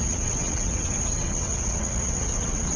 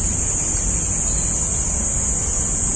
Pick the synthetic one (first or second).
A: first